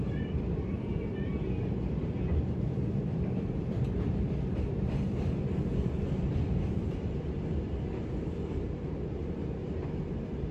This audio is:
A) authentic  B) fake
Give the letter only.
B